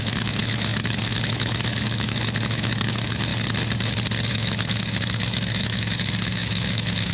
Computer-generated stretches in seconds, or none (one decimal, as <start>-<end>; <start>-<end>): 0.0-3.3; 4.3-7.1